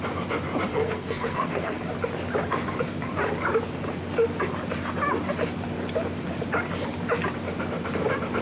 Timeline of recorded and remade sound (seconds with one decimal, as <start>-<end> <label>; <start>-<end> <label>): 0.0-0.7 recorded; 0.7-1.8 remade; 1.8-8.4 recorded